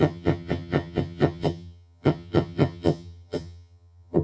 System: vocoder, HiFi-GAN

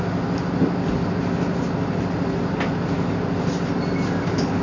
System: none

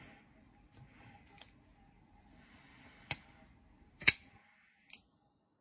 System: none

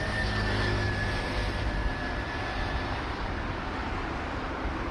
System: none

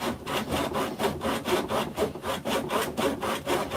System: none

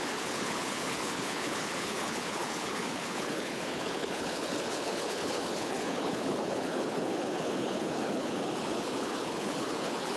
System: codec, HILCodec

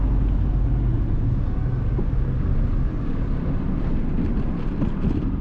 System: none